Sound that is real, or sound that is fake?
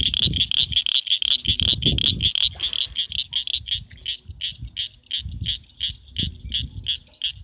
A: real